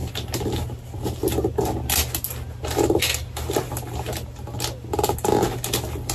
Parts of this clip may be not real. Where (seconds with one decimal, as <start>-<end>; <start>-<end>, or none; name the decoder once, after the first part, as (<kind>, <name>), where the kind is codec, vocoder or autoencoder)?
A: none